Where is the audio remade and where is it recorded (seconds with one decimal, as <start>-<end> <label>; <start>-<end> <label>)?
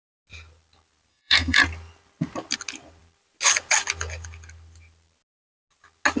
0.0-1.1 recorded; 1.1-1.6 remade; 1.6-6.2 recorded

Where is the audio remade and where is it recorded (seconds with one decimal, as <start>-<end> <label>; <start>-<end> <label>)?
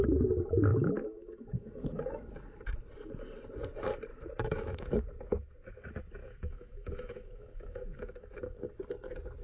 0.0-0.7 recorded; 0.7-2.3 remade; 2.3-4.1 recorded; 4.1-5.0 remade; 5.0-6.2 recorded; 6.2-8.7 remade; 8.7-9.4 recorded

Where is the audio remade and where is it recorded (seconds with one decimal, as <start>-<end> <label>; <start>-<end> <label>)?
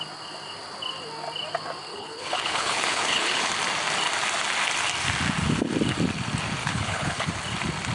0.0-1.9 recorded; 1.9-3.5 remade; 3.5-6.6 recorded; 6.6-7.3 remade; 7.3-7.9 recorded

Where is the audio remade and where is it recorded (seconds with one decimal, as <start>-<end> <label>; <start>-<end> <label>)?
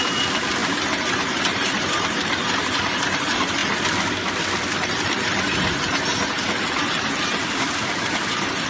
0.0-8.7 recorded